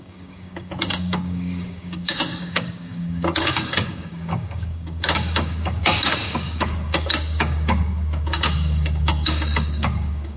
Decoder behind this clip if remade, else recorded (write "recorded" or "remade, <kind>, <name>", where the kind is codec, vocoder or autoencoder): remade, codec, DAC